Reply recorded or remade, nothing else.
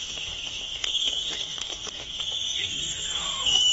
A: remade